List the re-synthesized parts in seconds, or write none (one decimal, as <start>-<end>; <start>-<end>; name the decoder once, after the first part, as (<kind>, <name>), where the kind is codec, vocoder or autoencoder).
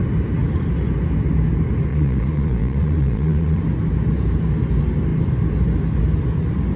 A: 1.9-3.6 (vocoder, Vocos)